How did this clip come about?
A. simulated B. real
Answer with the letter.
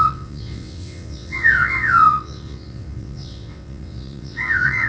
A